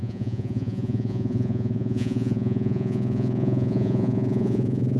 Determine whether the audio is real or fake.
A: fake